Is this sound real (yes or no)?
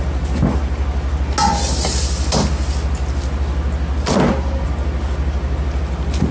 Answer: yes